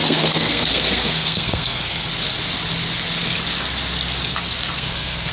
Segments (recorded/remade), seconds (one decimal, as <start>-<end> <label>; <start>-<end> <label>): 0.0-2.1 remade; 2.1-4.3 recorded; 4.3-5.3 remade